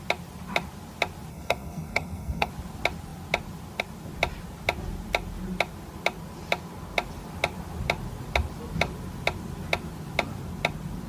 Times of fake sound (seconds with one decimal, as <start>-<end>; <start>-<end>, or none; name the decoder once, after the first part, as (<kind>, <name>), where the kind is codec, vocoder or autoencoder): 1.3-2.5 (codec, SNAC)

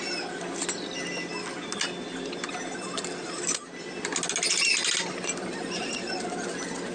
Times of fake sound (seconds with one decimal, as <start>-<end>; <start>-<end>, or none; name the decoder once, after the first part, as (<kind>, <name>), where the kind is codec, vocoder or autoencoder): none

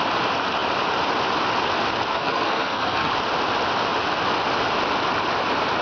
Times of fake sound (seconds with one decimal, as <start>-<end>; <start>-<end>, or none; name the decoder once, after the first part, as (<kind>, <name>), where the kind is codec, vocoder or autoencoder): 2.1-3.1 (codec, SNAC)

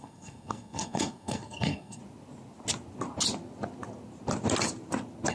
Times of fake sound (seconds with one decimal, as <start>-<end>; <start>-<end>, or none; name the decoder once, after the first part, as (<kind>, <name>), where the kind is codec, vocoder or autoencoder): 0.0-2.0 (codec, SNAC)

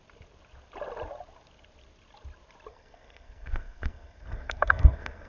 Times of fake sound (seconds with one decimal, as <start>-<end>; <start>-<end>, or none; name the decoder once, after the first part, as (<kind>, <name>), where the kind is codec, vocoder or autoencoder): 2.7-5.3 (codec, SNAC)

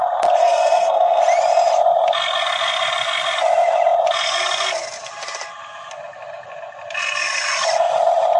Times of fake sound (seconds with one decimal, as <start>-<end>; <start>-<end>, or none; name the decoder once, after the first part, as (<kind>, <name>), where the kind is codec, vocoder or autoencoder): 0.4-1.2 (codec, SNAC)

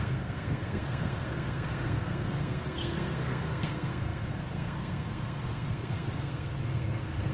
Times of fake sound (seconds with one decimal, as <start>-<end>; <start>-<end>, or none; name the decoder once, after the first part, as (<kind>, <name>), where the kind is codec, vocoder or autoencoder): 0.0-7.3 (codec, SNAC)